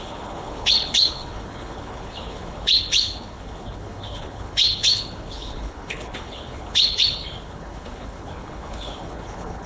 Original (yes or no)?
no